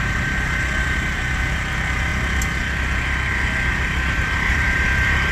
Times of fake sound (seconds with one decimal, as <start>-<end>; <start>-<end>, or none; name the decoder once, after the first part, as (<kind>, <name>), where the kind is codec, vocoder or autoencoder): 0.0-2.1 (vocoder, BigVGAN v2); 3.7-5.3